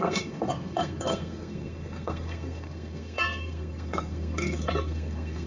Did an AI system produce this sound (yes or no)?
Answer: yes